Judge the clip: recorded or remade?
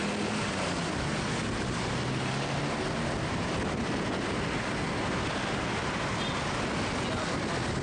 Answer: recorded